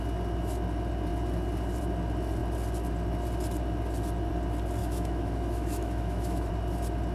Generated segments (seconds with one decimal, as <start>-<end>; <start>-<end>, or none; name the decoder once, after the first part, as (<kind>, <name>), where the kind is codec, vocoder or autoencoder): 4.8-6.5 (autoencoder, DAC-VAE)